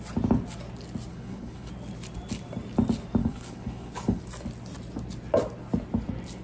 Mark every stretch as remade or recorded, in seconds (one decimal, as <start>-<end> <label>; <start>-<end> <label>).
0.0-1.1 recorded; 1.1-1.7 remade; 1.7-3.2 recorded; 3.2-4.2 remade; 4.2-6.4 recorded